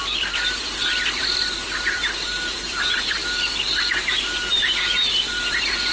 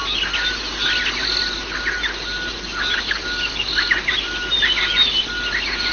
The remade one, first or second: first